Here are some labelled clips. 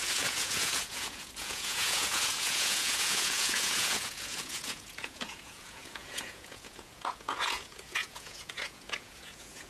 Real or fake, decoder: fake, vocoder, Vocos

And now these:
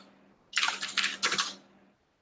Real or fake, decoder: real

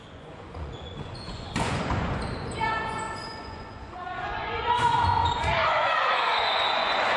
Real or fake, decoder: fake, vocoder, Vocos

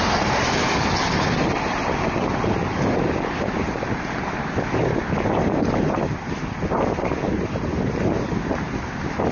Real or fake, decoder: real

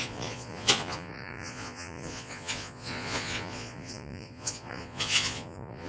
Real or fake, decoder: fake, vocoder, Vocos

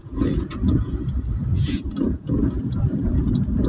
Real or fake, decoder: fake, vocoder, Vocos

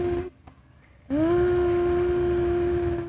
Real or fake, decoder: real